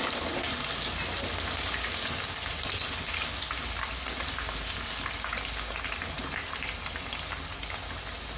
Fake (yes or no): no